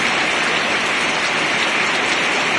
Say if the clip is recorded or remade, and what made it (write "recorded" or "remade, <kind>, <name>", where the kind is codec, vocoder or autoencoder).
recorded